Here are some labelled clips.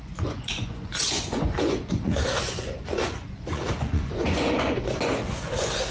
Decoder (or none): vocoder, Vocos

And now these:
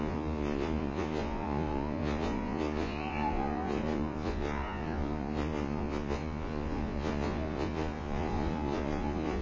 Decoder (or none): vocoder, Vocos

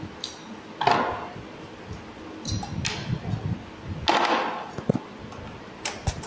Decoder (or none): none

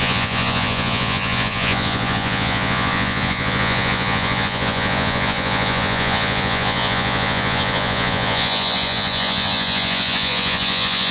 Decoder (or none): vocoder, Vocos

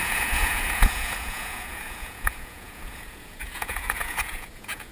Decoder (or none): vocoder, Vocos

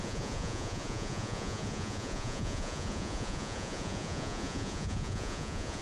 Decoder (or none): vocoder, Vocos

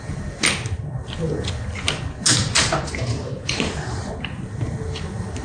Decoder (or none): none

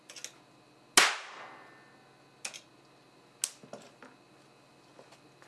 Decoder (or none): none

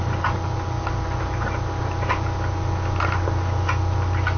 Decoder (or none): none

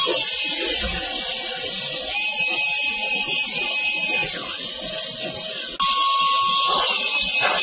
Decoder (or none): none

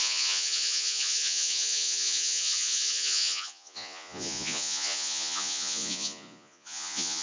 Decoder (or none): vocoder, Vocos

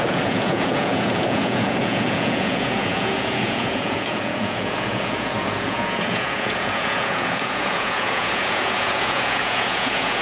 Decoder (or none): vocoder, Vocos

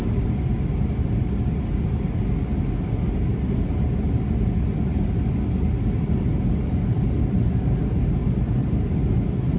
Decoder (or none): none